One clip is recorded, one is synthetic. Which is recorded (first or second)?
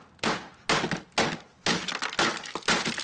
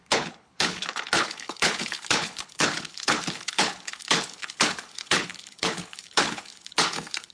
first